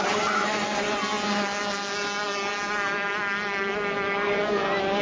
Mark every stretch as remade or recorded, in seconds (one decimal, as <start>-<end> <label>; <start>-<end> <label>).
0.0-5.0 recorded

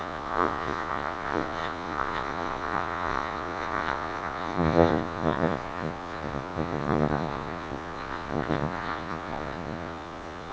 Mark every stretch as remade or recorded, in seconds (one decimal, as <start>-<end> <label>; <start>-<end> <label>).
0.0-10.5 remade

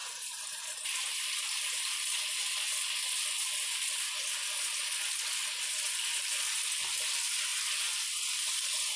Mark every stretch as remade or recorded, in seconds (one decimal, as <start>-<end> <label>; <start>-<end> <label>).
0.0-9.0 recorded

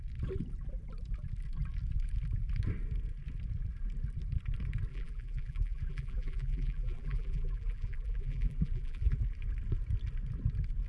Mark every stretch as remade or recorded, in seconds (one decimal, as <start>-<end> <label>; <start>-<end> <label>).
0.0-4.9 recorded; 4.9-9.2 remade; 9.2-10.9 recorded

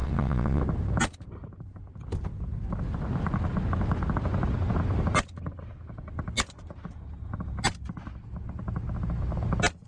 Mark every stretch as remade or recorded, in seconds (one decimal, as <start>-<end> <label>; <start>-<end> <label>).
0.0-0.6 remade; 0.6-9.9 recorded

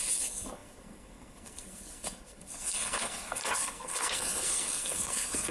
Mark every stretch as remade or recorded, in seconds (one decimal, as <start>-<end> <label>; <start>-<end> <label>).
0.0-5.5 remade